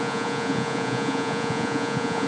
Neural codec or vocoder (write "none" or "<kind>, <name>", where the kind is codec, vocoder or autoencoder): vocoder, Vocos